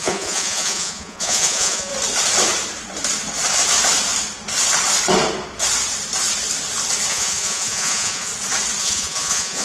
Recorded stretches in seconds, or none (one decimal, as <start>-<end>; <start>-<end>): 1.9-7.1; 8.3-8.8